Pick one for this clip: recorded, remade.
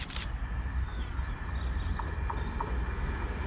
recorded